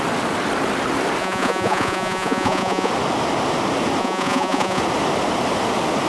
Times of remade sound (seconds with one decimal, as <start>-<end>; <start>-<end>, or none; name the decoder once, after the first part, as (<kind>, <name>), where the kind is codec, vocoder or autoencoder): 1.2-2.9 (vocoder, Vocos); 4.0-4.8